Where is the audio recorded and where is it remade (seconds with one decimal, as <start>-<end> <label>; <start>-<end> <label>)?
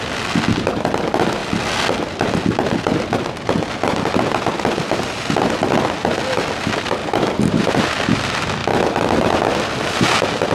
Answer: 0.0-7.0 recorded; 7.0-7.8 remade; 7.8-10.5 recorded